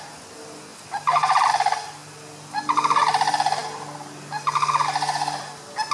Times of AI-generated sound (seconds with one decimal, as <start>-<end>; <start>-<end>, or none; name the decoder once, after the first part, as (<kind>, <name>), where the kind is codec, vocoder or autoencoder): 0.7-1.5 (vocoder, BigVGAN v2)